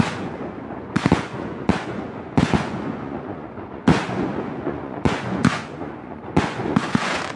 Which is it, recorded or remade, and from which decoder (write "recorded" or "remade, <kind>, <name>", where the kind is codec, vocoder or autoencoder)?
remade, vocoder, Vocos